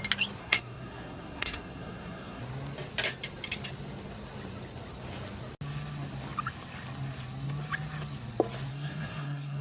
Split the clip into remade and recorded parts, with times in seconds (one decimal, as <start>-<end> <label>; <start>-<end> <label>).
0.0-0.4 recorded; 0.4-2.4 remade; 2.4-8.7 recorded; 8.7-9.6 remade